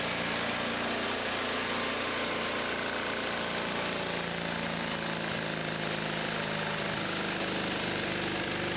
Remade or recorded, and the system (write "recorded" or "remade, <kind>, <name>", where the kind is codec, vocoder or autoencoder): recorded